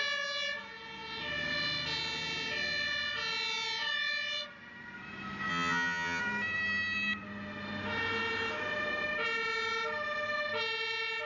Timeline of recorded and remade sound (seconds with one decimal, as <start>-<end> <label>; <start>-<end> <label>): 0.0-5.5 recorded; 5.5-6.2 remade; 6.2-11.3 recorded